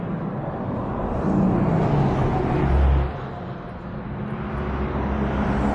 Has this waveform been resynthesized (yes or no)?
no